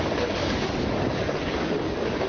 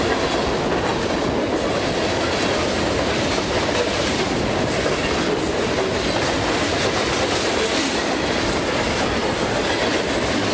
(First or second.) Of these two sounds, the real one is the second